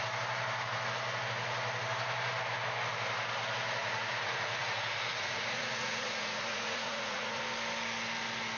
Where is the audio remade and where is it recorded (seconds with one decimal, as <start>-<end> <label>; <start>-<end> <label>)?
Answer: 0.0-3.8 recorded; 3.8-7.4 remade; 7.4-8.6 recorded